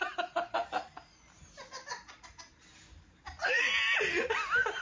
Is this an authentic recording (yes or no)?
yes